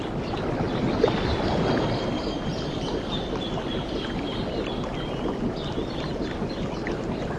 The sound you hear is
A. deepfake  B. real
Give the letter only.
B